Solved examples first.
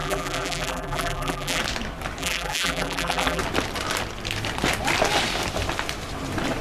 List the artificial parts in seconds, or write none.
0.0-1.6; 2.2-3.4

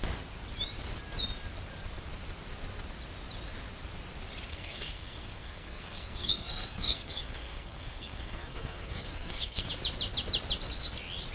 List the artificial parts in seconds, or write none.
4.5-9.7

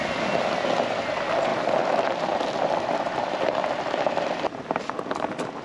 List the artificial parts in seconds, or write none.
1.5-4.9